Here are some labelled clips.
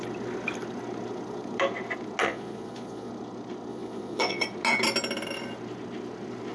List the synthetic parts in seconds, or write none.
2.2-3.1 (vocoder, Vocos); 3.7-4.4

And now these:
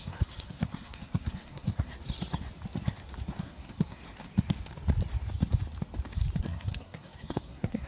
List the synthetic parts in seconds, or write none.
0.0-1.9 (codec, SNAC); 3.4-4.0; 6.4-7.9

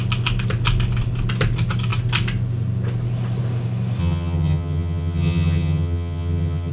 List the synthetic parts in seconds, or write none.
4.0-6.7 (vocoder, HiFi-GAN)

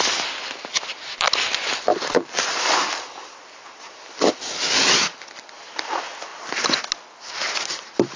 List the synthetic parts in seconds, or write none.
1.9-2.8 (vocoder, BigVGAN v2)

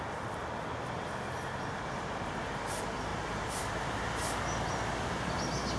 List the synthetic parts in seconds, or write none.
3.1-5.8 (vocoder, BigVGAN v2)

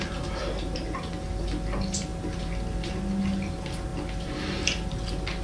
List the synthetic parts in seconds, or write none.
none